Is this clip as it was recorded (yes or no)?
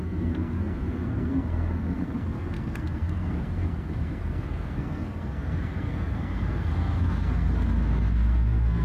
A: no